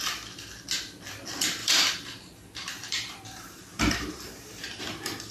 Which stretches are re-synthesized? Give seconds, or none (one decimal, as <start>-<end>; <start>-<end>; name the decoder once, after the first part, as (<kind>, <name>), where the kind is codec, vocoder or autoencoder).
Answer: 1.6-4.8 (vocoder, BigVGAN v2)